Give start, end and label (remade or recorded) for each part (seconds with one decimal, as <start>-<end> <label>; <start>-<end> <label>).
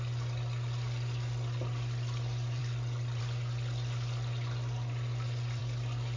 0.0-6.2 recorded